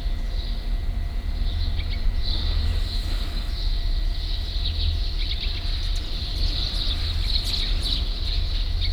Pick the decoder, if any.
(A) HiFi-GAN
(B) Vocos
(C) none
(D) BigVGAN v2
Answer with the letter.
C